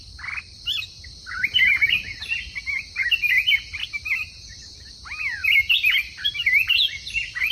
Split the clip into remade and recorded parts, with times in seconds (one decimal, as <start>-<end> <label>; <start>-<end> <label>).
0.0-5.4 recorded; 5.4-6.3 remade; 6.3-7.5 recorded